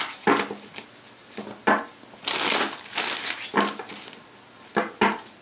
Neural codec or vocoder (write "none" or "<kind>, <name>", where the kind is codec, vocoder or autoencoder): none